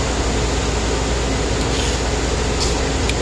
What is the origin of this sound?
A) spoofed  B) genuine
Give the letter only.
B